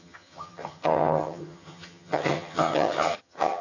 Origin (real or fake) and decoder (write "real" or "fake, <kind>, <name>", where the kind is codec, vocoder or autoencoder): fake, vocoder, HiFi-GAN